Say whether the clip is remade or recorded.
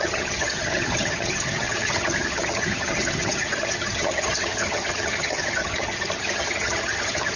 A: remade